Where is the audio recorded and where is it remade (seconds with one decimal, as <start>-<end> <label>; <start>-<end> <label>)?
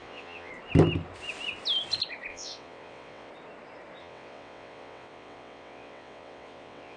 0.0-0.5 remade; 0.5-2.3 recorded; 2.3-3.3 remade; 3.3-4.0 recorded; 4.0-7.0 remade